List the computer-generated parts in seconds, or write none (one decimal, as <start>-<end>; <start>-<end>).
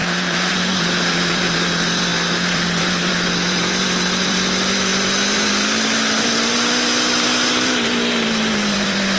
0.0-9.2